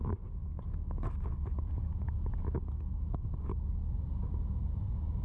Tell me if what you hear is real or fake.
real